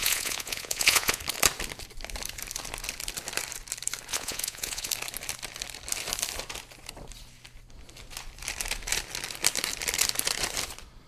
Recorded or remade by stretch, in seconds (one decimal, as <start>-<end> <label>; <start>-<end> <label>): 0.0-1.2 remade; 1.2-4.1 recorded; 4.1-4.9 remade; 4.9-11.1 recorded